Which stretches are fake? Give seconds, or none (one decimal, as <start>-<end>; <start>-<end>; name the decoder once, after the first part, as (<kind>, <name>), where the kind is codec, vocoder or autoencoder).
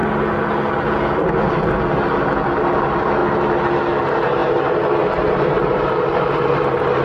2.8-3.2 (vocoder, BigVGAN v2); 4.0-7.0